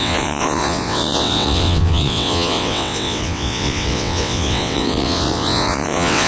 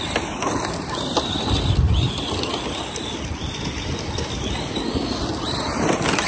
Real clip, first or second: second